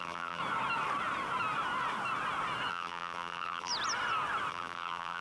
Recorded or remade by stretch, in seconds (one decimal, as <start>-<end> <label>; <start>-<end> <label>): 0.0-0.4 remade; 0.4-2.7 recorded; 2.7-3.7 remade; 3.7-4.5 recorded; 4.5-5.2 remade